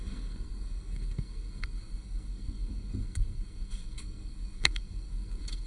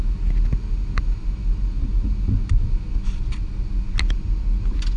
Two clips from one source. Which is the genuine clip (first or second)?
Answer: second